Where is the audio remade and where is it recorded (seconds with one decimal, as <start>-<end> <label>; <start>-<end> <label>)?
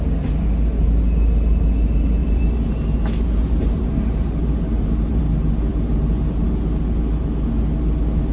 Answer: 0.0-2.2 recorded; 2.2-5.2 remade; 5.2-8.3 recorded